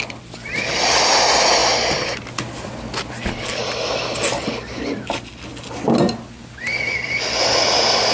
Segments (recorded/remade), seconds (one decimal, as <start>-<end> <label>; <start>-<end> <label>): 0.0-8.1 recorded